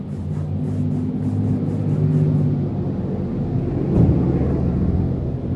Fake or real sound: real